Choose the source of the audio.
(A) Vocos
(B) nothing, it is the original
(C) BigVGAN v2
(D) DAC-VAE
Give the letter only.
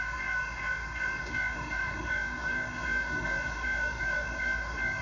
D